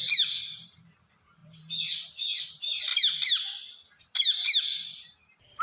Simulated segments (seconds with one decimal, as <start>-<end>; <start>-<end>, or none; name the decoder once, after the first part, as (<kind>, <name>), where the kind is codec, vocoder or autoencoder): 0.0-2.9 (vocoder, BigVGAN v2); 4.0-5.6